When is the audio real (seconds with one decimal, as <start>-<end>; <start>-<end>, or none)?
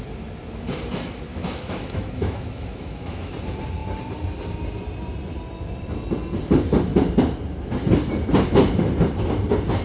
0.0-1.3; 3.3-9.8